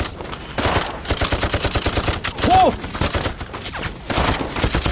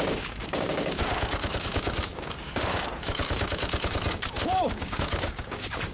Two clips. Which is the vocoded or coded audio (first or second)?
second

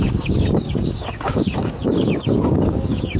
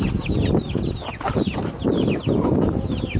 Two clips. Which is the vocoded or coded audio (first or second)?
first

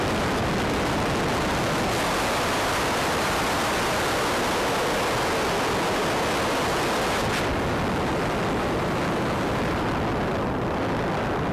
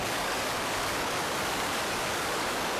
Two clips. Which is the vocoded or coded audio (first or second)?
second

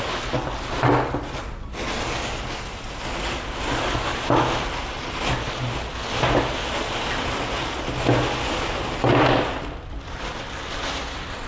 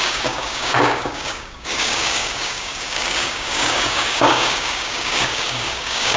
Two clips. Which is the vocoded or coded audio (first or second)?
second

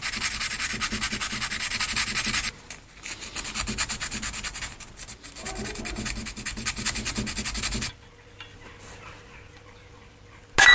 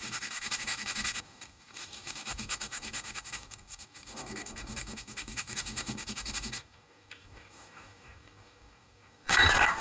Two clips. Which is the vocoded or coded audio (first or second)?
second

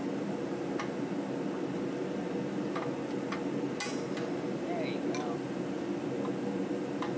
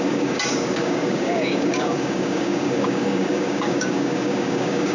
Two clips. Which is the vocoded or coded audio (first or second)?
second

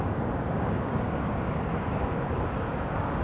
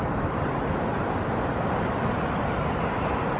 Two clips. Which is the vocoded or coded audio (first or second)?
first